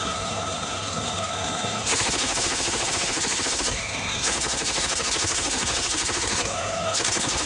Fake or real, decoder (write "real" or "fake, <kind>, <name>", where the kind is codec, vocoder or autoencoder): fake, codec, SNAC